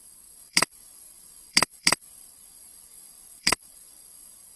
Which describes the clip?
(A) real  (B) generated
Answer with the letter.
B